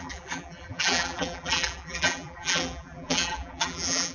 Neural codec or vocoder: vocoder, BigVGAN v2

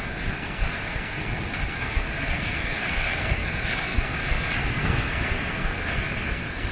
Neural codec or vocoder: codec, SNAC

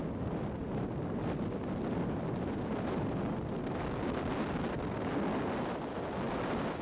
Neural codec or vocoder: none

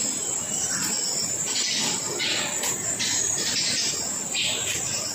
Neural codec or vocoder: none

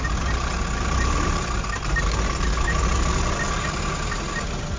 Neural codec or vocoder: none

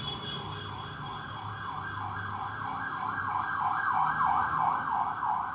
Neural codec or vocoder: vocoder, BigVGAN v2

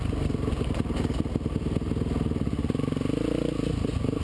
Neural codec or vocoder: none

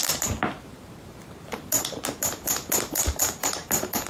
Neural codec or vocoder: vocoder, BigVGAN v2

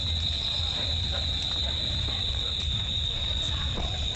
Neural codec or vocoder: none